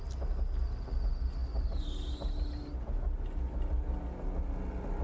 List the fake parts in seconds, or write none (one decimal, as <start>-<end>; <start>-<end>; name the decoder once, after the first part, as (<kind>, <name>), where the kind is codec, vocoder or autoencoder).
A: none